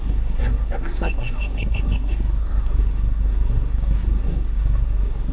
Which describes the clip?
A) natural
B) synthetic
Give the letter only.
B